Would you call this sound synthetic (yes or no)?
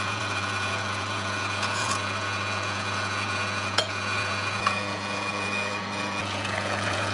yes